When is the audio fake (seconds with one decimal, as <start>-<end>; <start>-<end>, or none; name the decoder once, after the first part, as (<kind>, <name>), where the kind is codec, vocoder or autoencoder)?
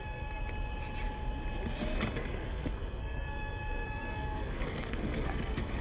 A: 0.0-0.4 (codec, SNAC); 2.1-5.8